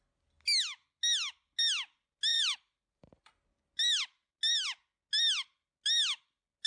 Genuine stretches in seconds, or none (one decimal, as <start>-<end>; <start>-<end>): 0.0-2.3; 3.3-6.7